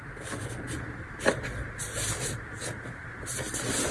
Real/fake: real